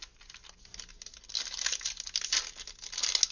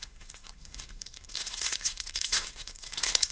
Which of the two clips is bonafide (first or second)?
first